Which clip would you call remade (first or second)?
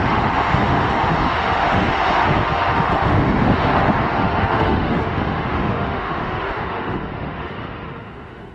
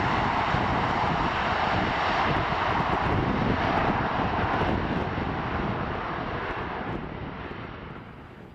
first